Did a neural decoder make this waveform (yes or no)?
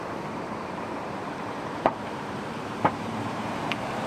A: yes